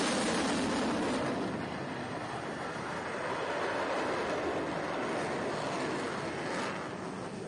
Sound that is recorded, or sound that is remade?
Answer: recorded